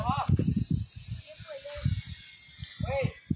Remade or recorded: recorded